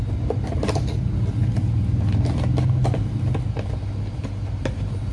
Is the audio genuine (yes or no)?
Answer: yes